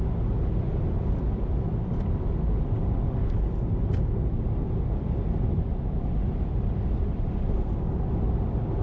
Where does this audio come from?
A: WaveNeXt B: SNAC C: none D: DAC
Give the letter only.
C